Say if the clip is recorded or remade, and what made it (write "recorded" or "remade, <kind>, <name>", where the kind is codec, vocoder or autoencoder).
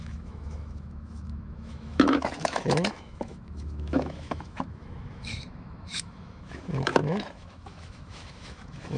remade, autoencoder, DAC-VAE